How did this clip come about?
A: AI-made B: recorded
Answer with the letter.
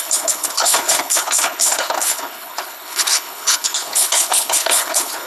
A